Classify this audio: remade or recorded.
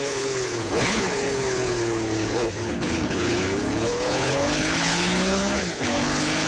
remade